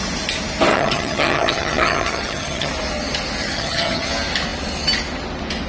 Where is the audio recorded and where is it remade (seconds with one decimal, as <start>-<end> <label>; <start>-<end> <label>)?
0.0-0.7 recorded; 0.7-2.7 remade; 2.7-3.4 recorded; 3.4-4.1 remade; 4.1-5.7 recorded